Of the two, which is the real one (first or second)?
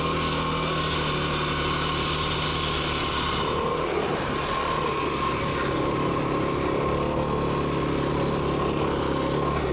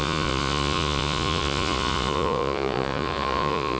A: first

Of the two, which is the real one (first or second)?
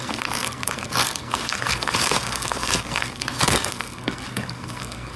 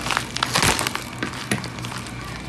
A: second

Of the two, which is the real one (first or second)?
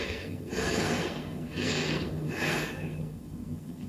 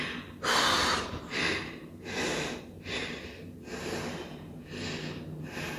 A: second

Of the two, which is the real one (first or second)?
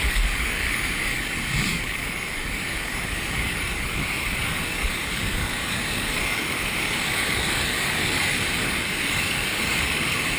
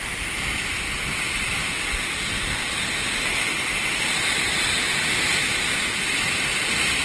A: second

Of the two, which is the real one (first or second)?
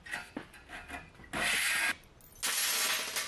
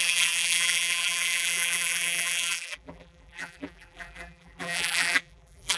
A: first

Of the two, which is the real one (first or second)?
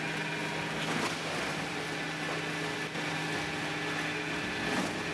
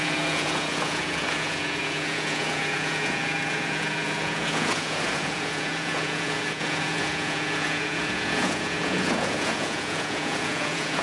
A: first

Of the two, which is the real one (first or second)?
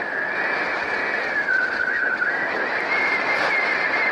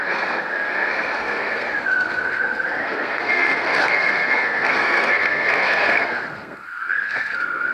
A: first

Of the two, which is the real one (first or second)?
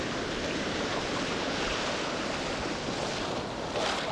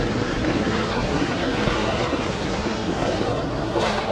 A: first